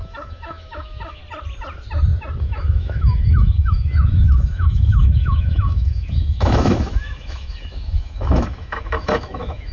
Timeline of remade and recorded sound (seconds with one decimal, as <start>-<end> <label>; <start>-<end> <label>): 0.0-1.2 remade; 1.2-2.4 recorded; 2.4-9.7 remade

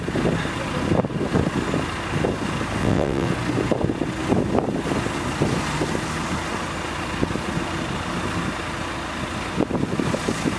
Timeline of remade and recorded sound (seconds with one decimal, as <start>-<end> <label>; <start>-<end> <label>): 0.0-2.8 recorded; 2.8-3.3 remade; 3.3-10.6 recorded

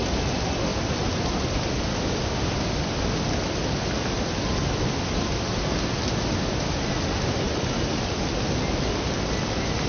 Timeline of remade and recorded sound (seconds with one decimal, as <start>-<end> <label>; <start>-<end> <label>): 0.0-9.9 recorded